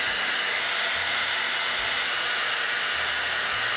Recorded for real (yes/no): yes